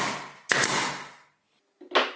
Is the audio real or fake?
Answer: real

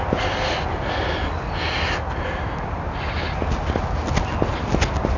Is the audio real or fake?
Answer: real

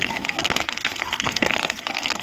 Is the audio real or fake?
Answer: fake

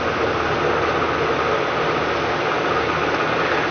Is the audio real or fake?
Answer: real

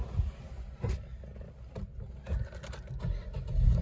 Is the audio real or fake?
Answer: real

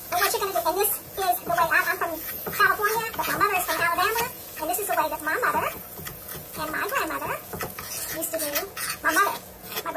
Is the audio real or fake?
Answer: fake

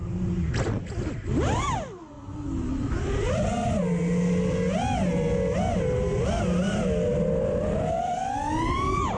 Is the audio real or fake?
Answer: real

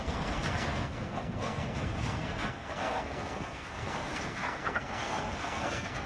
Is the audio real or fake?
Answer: fake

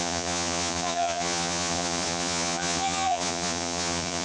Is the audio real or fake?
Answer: fake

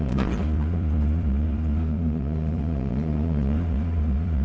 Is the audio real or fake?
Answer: fake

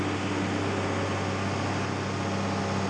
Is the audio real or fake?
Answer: real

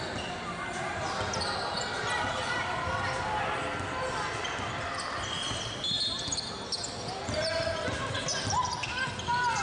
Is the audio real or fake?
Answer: real